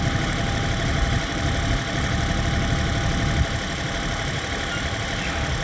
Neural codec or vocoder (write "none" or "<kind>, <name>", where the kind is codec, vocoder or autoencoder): none